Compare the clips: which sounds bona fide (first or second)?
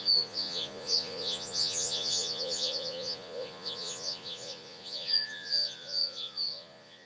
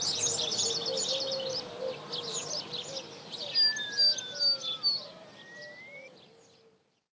second